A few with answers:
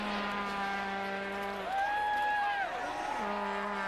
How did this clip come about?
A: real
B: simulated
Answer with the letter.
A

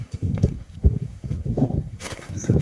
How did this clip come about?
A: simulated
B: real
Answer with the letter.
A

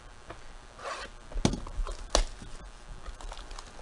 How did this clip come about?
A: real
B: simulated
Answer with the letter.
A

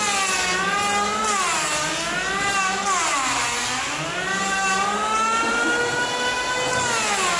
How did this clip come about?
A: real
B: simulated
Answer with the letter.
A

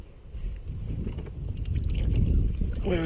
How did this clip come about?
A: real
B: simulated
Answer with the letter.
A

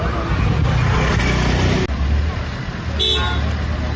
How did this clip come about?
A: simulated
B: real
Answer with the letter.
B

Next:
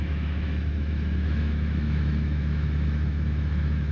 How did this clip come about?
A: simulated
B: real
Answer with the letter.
A